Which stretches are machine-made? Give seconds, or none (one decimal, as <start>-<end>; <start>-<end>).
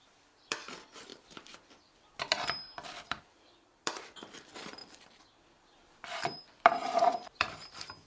0.0-8.1